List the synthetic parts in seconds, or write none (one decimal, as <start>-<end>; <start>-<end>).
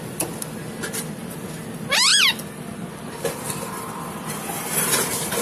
none